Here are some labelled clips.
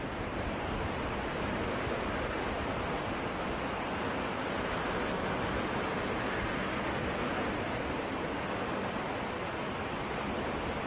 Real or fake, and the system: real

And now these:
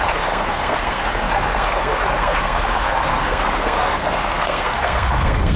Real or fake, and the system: fake, codec, SNAC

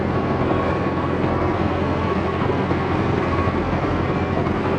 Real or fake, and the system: fake, codec, SNAC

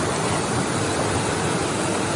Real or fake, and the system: real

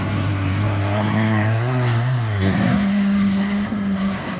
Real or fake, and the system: fake, codec, SNAC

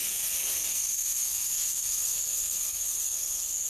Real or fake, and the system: fake, codec, SNAC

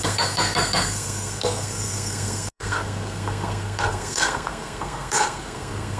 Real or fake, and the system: fake, codec, SNAC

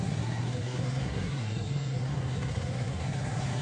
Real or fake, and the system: fake, codec, SNAC